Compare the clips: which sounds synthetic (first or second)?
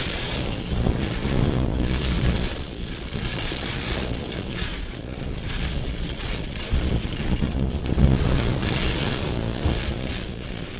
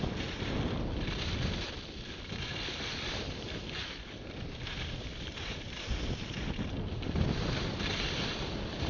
first